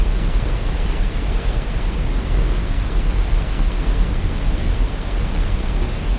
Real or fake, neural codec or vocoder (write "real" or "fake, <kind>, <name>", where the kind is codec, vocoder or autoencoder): fake, codec, SNAC